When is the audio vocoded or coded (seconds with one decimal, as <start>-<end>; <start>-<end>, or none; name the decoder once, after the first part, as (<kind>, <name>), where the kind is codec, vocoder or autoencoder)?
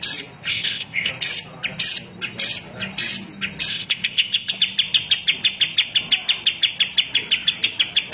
0.5-1.1 (codec, ZipCodec); 3.7-4.5